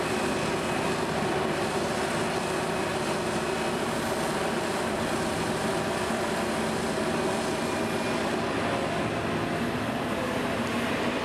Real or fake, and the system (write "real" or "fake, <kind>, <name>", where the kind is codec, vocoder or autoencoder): real